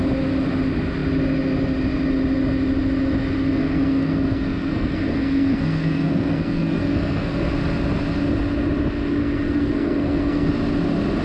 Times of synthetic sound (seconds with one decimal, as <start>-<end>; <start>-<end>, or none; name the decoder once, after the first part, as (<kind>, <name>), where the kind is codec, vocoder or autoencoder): 3.6-7.5 (codec, SNAC); 9.2-10.5